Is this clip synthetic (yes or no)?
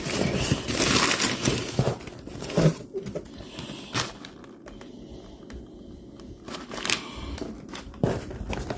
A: no